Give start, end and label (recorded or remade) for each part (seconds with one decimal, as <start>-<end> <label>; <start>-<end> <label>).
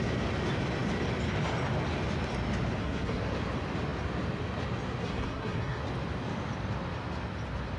0.0-2.8 recorded; 2.8-3.3 remade; 3.3-5.0 recorded; 5.0-5.8 remade; 5.8-7.8 recorded